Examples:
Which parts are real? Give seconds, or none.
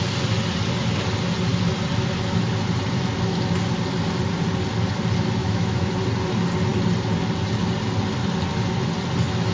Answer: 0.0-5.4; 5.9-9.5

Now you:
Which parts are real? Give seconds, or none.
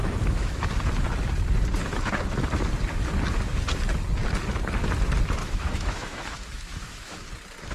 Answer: 0.6-5.4; 7.3-7.7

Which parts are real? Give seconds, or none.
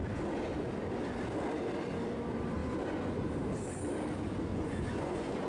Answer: 0.0-2.6; 3.3-4.5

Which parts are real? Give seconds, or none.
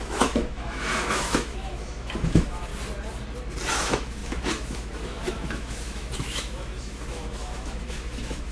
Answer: 2.7-3.7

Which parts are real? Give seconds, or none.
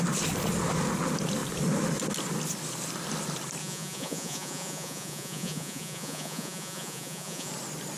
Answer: 0.0-3.6; 7.5-8.0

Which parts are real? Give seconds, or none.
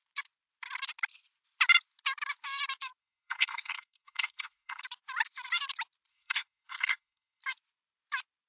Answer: 0.0-3.0; 4.8-6.1; 7.4-8.5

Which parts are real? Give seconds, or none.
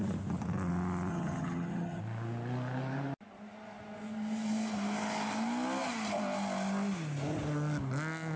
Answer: 0.0-1.1; 2.0-8.4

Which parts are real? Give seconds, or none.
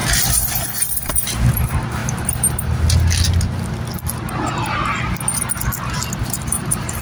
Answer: 0.0-0.5; 2.0-6.2